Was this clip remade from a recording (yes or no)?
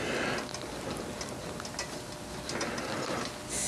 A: no